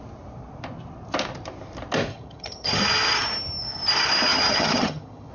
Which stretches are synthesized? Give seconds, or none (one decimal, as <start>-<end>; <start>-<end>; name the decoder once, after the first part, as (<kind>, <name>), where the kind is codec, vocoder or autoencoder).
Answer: 2.1-2.8 (vocoder, HiFi-GAN); 4.3-5.3